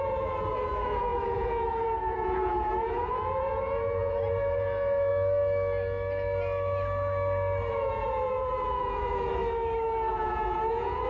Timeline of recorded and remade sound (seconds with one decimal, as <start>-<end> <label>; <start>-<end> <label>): 0.0-5.1 remade; 5.1-7.7 recorded; 7.7-9.4 remade; 9.4-10.1 recorded; 10.1-11.1 remade